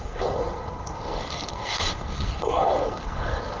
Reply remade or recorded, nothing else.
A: remade